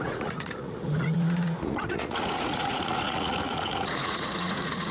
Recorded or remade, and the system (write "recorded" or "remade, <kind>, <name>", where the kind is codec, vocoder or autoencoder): remade, vocoder, Vocos